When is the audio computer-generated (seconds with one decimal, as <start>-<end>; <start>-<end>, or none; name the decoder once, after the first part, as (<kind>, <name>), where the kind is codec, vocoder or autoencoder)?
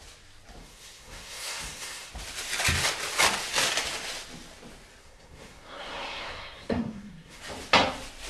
0.6-2.1 (codec, SNAC); 5.0-7.4